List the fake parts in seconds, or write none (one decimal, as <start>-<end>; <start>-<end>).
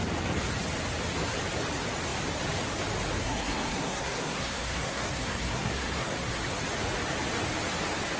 3.2-6.5